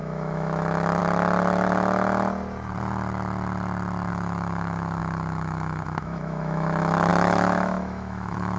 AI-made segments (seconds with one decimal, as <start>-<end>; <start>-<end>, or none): 0.0-1.0; 4.1-8.6